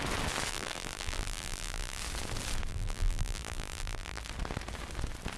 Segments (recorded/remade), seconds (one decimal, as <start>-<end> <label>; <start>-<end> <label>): 0.0-0.5 recorded; 0.5-2.0 remade; 2.0-2.7 recorded; 2.7-4.2 remade; 4.2-5.4 recorded

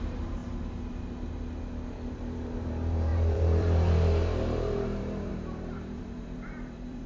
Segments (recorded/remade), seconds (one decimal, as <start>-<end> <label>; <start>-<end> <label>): 0.0-0.4 remade; 0.4-2.1 recorded; 2.1-7.1 remade

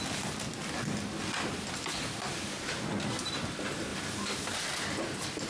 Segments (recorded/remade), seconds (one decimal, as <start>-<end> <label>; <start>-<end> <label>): 0.0-5.5 recorded

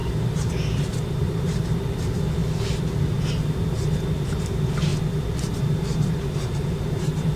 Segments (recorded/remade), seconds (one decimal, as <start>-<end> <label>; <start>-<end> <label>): 0.0-2.4 remade; 2.4-4.4 recorded; 4.4-4.9 remade; 4.9-5.8 recorded; 5.8-7.4 remade

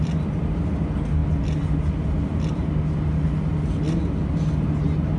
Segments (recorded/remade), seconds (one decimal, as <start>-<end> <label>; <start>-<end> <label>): 0.0-5.2 recorded

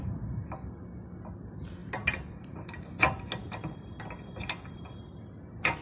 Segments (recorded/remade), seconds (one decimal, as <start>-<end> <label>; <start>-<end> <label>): 0.0-5.8 recorded

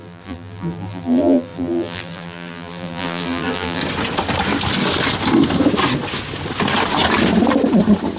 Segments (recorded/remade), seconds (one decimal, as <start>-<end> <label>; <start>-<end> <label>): 0.0-3.8 remade; 3.8-8.2 recorded